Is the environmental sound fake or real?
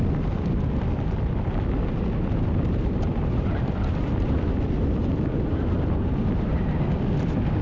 fake